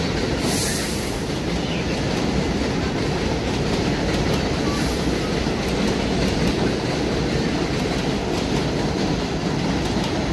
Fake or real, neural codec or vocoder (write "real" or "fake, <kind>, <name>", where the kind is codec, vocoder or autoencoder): real